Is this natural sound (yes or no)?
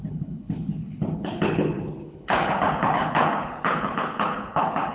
no